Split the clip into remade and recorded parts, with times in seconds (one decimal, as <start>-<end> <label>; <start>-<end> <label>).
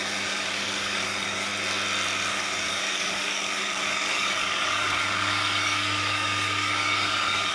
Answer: 0.0-1.5 remade; 1.5-2.3 recorded; 2.3-7.5 remade